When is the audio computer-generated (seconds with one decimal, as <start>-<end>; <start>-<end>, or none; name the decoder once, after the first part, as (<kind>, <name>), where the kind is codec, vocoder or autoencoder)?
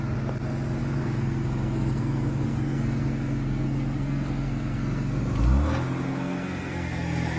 0.8-5.2 (codec, SNAC); 6.1-7.4